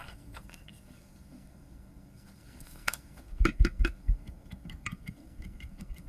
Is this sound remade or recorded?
remade